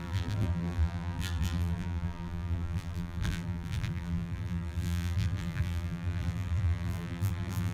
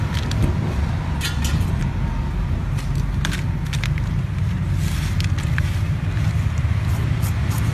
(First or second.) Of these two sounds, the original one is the second